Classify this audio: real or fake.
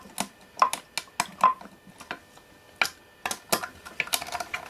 real